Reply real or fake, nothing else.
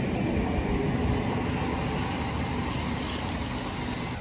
real